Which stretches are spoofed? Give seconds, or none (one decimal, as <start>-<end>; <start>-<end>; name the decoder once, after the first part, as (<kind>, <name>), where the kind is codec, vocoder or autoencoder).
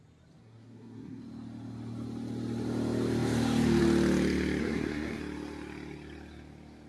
0.4-1.2 (codec, SNAC); 4.6-5.2